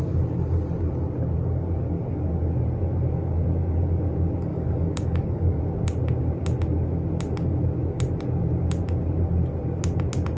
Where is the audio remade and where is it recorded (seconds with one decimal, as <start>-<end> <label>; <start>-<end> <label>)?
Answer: 0.0-4.5 recorded; 4.5-5.6 remade; 5.6-10.4 recorded